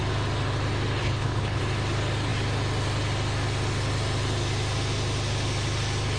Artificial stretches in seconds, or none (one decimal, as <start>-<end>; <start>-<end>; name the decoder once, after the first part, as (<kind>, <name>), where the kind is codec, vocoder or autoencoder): 1.0-1.6 (codec, HILCodec)